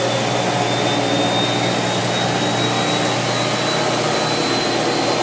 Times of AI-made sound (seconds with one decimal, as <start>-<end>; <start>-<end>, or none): none